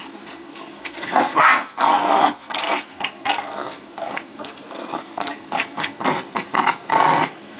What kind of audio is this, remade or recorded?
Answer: remade